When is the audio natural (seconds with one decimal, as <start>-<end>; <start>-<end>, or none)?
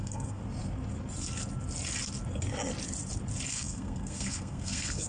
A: 0.4-3.5